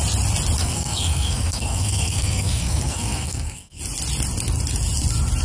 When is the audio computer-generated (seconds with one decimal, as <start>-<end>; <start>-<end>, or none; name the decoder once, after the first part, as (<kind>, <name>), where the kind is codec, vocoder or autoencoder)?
0.6-3.8 (codec, SNAC)